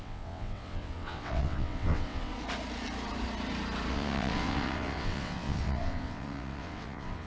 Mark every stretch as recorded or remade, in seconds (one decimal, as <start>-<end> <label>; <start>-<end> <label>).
0.0-2.3 remade; 2.3-3.9 recorded; 3.9-7.3 remade